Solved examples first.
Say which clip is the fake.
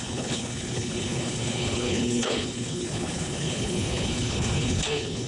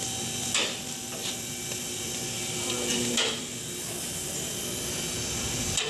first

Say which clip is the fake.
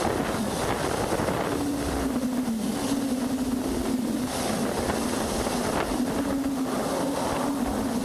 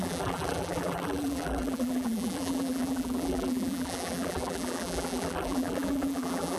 second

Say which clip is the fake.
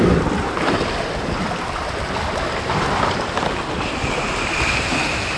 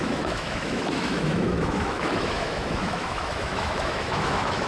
second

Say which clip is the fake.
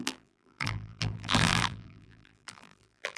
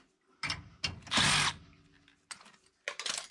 first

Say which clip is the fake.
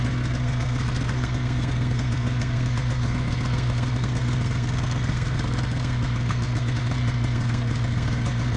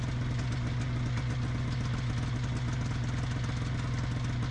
first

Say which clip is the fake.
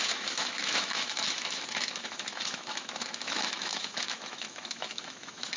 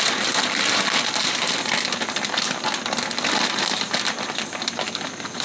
first